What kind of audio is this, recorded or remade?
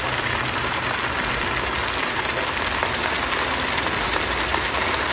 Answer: recorded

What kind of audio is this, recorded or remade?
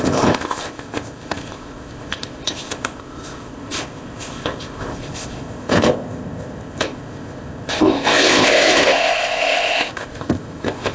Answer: remade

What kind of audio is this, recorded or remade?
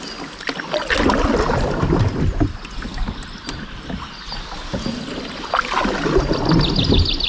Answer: recorded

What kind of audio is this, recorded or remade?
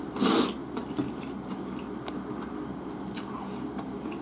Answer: recorded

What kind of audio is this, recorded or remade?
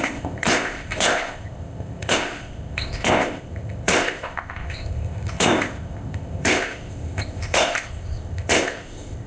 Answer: remade